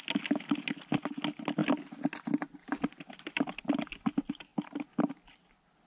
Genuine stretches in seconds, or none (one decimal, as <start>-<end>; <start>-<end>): 0.0-5.9